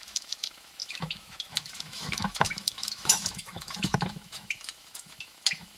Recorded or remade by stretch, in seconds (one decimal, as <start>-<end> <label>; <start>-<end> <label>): 0.0-5.8 remade

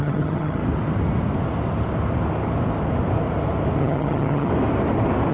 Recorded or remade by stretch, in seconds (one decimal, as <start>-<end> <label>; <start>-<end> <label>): 0.0-0.6 remade; 0.6-3.8 recorded; 3.8-4.5 remade; 4.5-5.3 recorded